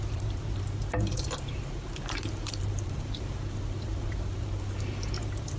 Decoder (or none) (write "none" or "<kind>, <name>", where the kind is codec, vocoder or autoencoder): vocoder, BigVGAN v2